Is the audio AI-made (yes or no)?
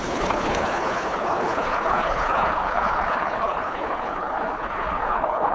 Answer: yes